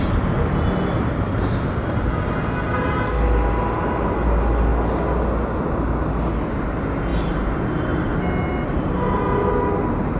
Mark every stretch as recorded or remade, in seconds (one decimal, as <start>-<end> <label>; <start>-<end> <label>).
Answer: 0.0-10.2 recorded